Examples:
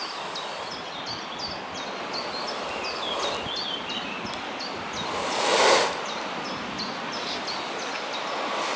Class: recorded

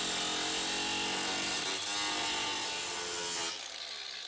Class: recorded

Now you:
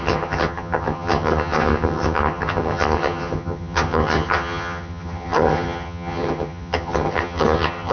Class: remade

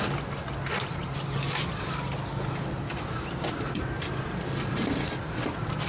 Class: recorded